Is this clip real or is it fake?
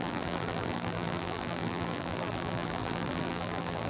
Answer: fake